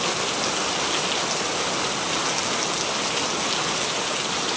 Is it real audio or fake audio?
real